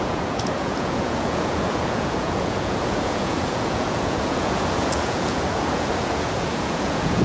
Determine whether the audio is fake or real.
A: fake